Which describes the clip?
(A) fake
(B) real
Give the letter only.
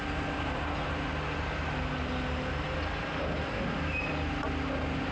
B